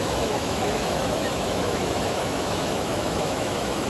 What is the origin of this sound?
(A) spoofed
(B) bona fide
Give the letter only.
A